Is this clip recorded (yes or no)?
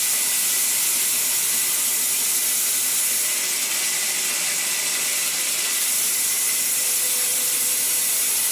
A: yes